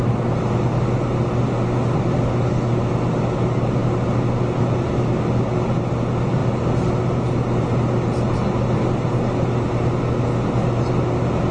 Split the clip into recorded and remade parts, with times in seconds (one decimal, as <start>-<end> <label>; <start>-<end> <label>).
0.0-11.5 recorded